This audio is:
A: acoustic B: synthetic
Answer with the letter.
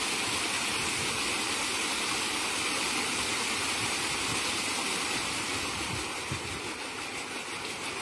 A